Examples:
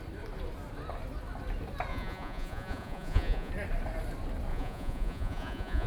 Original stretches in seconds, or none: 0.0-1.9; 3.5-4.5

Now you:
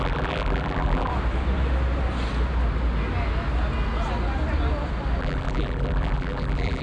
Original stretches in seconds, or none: 1.1-5.2

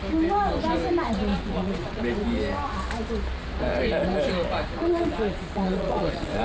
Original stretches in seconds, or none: 0.0-1.3; 2.0-4.8

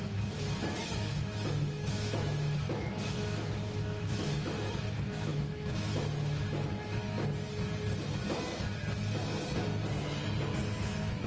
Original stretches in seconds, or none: 7.0-10.8

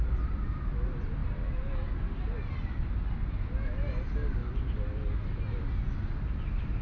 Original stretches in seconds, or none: 0.0-6.8

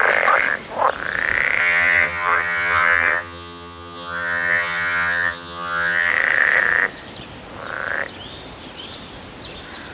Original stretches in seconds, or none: 0.0-1.6; 6.1-9.9